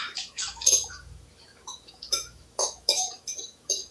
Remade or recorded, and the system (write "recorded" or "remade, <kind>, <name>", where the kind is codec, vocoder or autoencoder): remade, autoencoder, DAC-VAE